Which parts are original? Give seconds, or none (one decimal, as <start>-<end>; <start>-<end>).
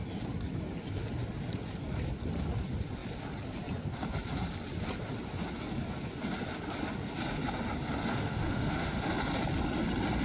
0.0-8.1; 9.1-10.2